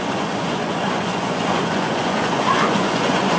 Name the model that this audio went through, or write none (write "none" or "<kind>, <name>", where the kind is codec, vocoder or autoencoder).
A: vocoder, Vocos